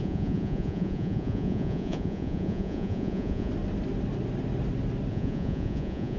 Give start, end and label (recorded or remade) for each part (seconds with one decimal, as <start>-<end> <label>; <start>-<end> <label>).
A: 0.0-3.5 remade; 3.5-5.1 recorded; 5.1-6.2 remade